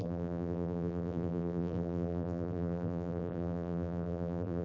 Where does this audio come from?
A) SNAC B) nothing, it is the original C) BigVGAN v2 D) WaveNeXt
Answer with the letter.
C